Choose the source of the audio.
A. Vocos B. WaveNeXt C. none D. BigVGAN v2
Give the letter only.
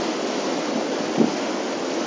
C